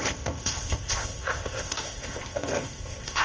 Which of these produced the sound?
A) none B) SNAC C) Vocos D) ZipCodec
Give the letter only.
D